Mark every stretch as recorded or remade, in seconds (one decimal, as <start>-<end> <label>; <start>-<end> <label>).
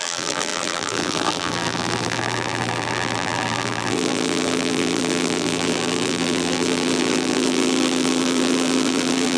0.0-9.4 remade